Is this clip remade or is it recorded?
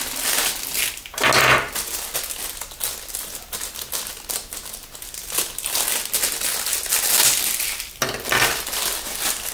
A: recorded